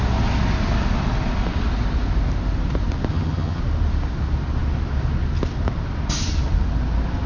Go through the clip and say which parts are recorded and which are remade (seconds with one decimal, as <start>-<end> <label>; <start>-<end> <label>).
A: 0.0-3.1 recorded; 3.1-3.6 remade; 3.6-7.3 recorded